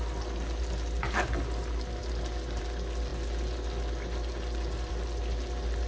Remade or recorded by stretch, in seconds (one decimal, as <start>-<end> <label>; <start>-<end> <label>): 0.0-5.9 recorded